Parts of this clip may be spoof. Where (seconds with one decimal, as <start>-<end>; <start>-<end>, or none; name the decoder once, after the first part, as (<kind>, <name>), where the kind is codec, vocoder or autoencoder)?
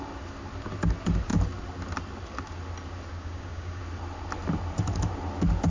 3.1-3.8 (codec, DAC)